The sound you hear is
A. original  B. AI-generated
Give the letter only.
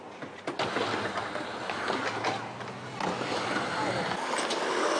A